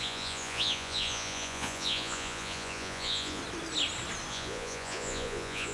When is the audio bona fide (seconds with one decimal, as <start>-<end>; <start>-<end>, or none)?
3.4-4.3